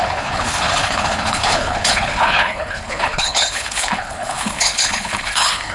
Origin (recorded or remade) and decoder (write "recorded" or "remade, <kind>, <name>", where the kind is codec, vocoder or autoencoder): remade, codec, HILCodec